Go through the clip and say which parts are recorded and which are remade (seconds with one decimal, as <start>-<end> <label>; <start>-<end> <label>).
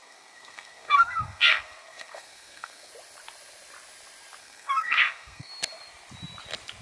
0.0-2.9 remade; 2.9-4.4 recorded; 4.4-5.5 remade; 5.5-6.8 recorded